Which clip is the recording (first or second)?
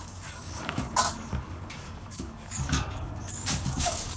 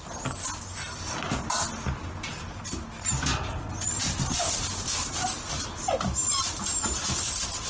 second